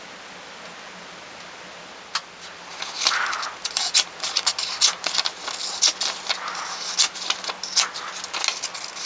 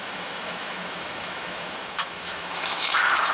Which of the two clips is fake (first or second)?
second